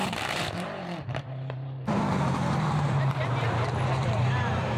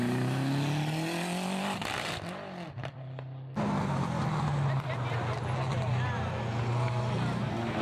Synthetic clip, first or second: first